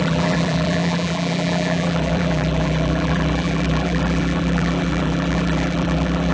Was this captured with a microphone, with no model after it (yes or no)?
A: no